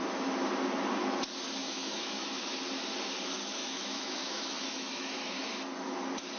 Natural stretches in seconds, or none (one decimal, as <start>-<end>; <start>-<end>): 0.0-1.6; 2.5-3.6; 5.5-6.4